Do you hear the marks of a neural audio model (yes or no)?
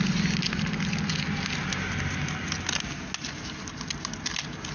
no